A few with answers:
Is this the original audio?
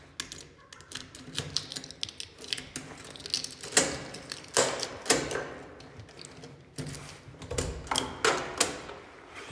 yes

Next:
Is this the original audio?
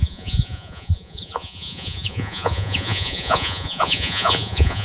no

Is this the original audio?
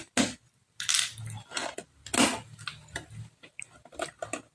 yes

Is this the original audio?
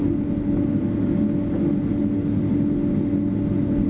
yes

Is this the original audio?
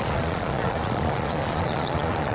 no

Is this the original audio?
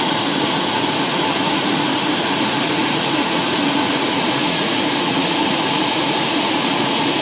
no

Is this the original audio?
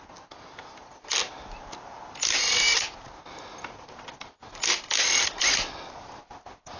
yes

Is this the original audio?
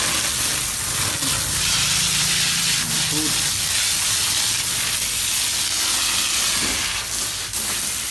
yes